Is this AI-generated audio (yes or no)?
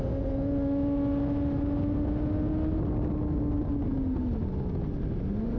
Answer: no